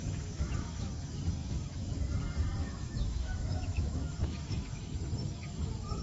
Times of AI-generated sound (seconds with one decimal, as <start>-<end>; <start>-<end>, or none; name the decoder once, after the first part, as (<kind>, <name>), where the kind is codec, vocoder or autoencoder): 0.0-0.9 (autoencoder, DAC-VAE); 1.4-1.9; 2.6-4.8